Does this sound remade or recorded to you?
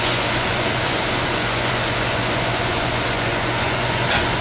remade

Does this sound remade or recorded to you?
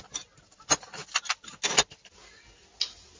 recorded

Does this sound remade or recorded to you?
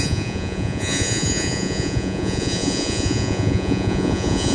remade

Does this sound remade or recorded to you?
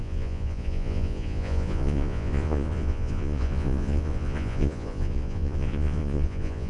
remade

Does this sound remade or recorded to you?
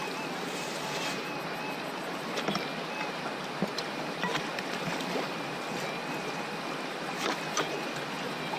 recorded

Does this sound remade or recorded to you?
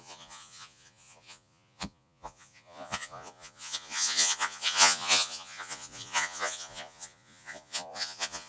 remade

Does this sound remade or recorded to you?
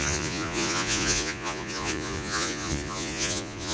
remade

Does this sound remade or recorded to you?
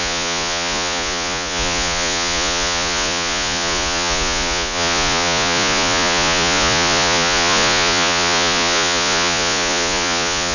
remade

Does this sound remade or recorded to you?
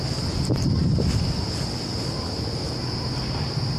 recorded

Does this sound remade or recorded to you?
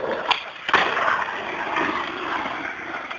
recorded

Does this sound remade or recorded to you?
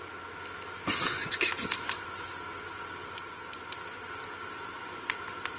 recorded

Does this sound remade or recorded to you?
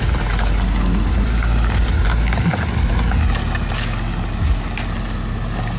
recorded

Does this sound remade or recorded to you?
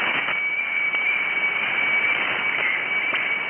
recorded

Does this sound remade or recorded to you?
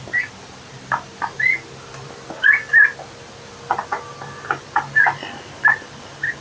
recorded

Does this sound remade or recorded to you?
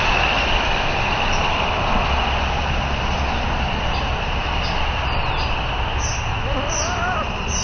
recorded